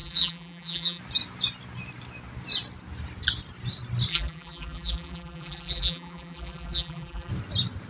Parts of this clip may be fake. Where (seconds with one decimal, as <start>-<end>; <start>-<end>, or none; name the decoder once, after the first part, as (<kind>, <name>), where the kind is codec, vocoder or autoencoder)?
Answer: 0.0-1.0 (vocoder, BigVGAN v2); 4.1-7.3

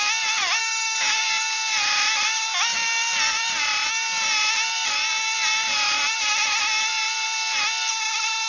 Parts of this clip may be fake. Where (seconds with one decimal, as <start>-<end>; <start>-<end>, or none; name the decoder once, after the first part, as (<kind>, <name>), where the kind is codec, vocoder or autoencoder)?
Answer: 0.6-1.2 (autoencoder, DAC-VAE)